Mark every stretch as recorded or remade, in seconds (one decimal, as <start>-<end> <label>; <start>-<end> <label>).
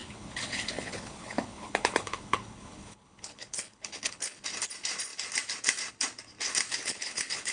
0.0-4.4 remade; 4.4-6.7 recorded; 6.7-7.5 remade